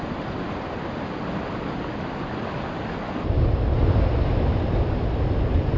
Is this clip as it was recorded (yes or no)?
yes